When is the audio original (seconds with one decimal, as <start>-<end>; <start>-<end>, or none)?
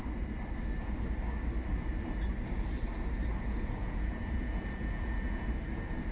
0.0-3.2; 5.5-6.1